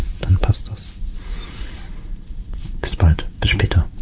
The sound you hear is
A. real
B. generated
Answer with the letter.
B